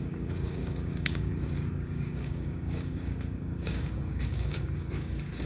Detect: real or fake fake